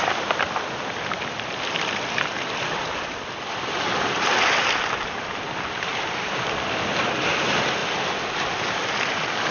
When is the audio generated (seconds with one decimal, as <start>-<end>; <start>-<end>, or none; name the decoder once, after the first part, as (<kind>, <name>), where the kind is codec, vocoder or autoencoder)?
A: 0.0-7.8 (vocoder, BigVGAN v2); 8.6-9.5